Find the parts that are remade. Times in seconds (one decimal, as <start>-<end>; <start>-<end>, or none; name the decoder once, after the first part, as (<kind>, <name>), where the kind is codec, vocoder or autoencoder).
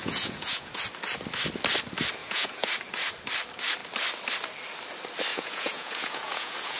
0.0-0.8 (vocoder, Vocos); 2.2-2.7; 5.3-6.8